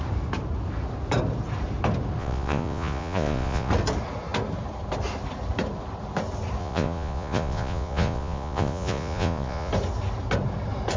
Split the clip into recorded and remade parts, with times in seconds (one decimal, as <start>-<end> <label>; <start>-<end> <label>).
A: 0.0-2.2 recorded; 2.2-3.7 remade; 3.7-6.6 recorded; 6.6-9.7 remade; 9.7-11.0 recorded